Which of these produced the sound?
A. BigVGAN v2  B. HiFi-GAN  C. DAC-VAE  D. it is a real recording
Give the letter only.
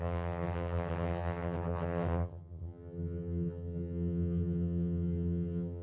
B